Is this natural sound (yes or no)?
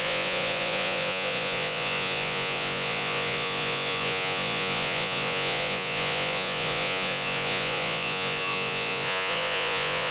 no